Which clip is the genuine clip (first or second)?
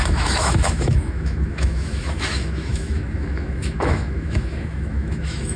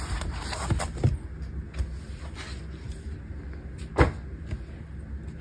second